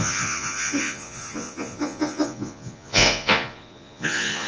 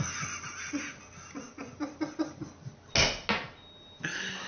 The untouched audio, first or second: second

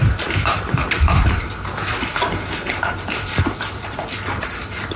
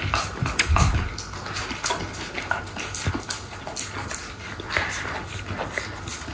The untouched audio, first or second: second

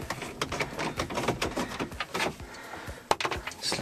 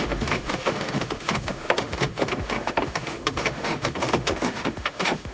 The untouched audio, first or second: first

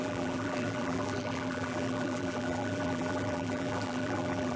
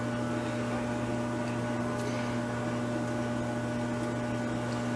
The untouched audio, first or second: second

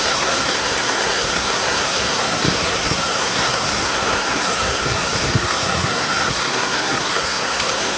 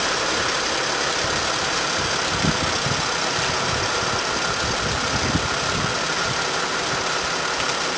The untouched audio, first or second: second